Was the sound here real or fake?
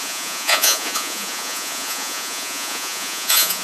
fake